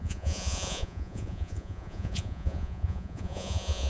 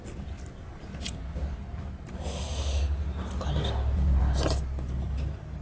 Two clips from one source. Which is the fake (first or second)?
first